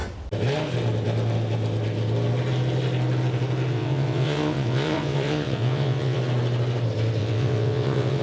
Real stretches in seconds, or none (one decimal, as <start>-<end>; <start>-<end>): 0.0-3.7; 6.2-7.2